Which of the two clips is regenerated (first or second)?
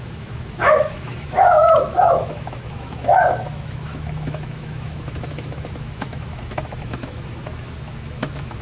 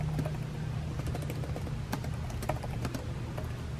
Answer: first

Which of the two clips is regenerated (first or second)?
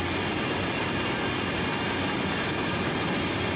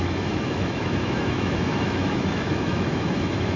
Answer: second